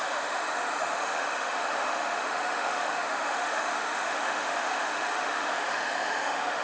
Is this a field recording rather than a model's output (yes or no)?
no